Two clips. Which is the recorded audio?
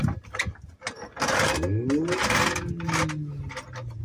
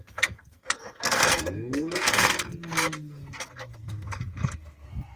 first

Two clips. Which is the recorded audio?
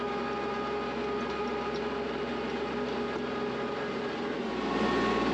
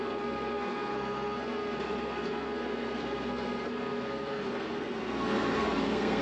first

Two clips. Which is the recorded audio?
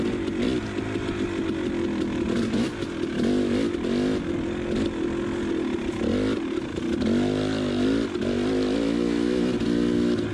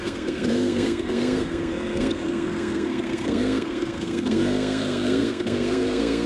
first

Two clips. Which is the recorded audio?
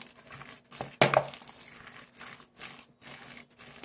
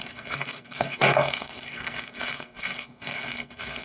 first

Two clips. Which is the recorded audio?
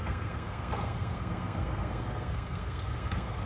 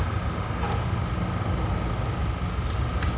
second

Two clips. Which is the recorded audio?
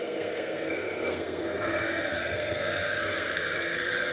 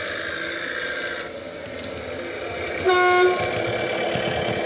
second